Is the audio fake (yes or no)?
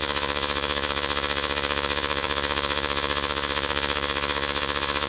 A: yes